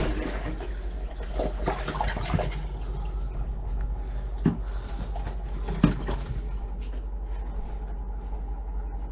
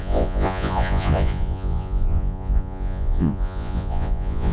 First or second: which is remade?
second